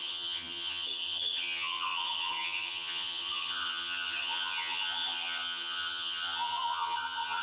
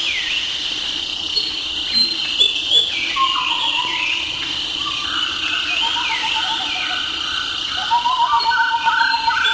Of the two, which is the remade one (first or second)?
first